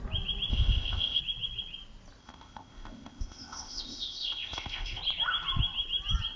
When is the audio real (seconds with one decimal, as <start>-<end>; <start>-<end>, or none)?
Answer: 0.0-0.5; 1.2-2.2; 5.0-6.4